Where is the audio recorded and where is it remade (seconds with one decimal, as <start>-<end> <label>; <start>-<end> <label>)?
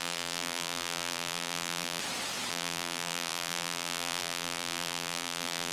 0.0-2.0 remade; 2.0-2.5 recorded; 2.5-5.7 remade